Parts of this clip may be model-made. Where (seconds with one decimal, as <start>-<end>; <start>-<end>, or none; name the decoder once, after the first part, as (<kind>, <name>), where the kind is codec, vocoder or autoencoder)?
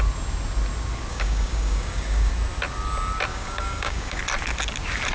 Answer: 1.1-2.3 (codec, DAC); 3.3-4.2